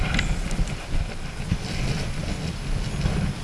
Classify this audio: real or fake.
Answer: real